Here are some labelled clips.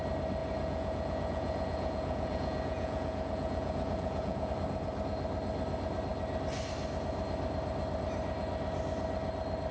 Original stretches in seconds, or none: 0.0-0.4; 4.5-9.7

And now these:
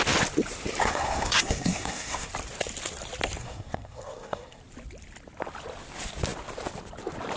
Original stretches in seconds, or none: 0.0-0.8; 2.3-3.4; 4.6-7.4

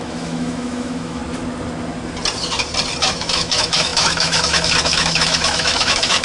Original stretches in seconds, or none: 1.2-3.0

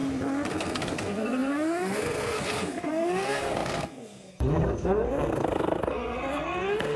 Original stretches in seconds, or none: 0.0-0.5

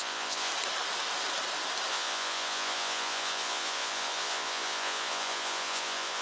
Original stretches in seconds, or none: 0.5-1.9

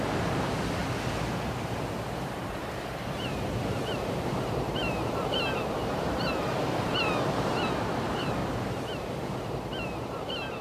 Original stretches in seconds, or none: 0.8-3.6; 8.4-9.2